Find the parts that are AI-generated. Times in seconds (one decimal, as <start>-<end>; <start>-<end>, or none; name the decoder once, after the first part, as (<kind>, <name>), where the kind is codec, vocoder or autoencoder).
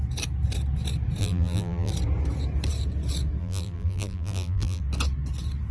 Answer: 1.2-1.9 (vocoder, BigVGAN v2); 3.4-4.8